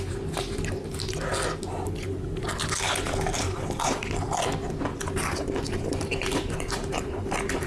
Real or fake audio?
real